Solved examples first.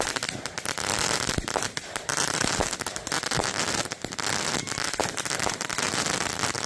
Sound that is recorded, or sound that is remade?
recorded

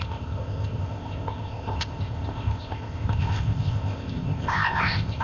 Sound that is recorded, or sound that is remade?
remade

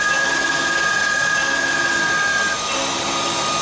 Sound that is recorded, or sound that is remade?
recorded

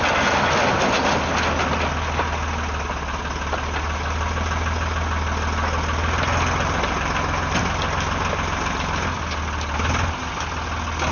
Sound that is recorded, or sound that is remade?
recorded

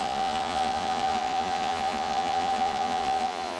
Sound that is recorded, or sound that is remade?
remade